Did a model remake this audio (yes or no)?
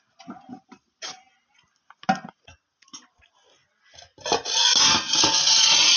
no